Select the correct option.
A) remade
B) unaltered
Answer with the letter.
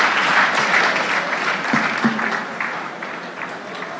B